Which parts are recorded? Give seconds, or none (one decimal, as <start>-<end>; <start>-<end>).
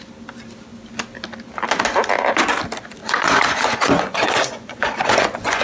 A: 0.0-3.0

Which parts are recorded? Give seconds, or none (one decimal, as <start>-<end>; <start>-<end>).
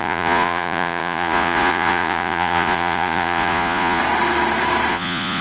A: 4.0-4.9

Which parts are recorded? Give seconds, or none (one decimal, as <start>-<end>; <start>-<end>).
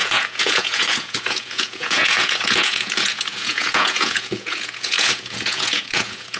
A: none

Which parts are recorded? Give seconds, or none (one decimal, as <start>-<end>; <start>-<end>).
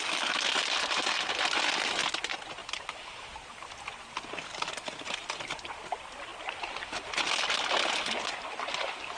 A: 0.0-9.2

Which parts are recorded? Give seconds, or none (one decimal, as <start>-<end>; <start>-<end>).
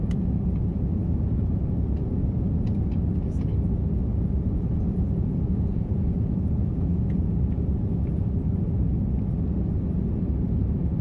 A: 0.0-4.0; 7.3-11.0